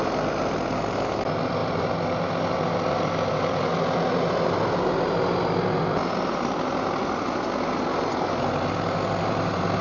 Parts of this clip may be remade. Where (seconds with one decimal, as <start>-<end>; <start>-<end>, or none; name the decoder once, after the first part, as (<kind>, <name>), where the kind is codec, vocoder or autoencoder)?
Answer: none